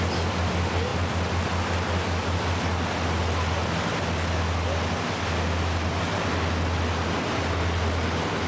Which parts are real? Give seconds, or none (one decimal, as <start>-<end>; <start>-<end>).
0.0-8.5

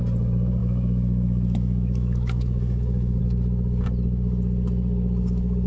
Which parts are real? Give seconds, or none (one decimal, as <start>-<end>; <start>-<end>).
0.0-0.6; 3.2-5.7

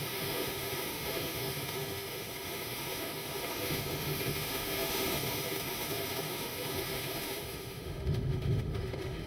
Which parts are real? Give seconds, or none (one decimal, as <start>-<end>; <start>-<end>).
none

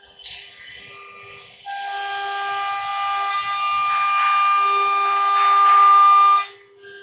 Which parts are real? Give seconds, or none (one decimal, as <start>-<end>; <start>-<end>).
0.0-7.0